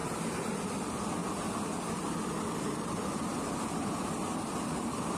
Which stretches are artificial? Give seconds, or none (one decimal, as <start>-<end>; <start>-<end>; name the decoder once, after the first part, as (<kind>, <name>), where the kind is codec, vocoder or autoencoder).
0.0-0.5 (vocoder, BigVGAN v2)